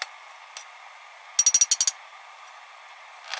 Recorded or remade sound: recorded